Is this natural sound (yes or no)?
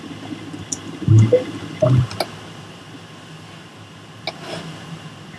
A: yes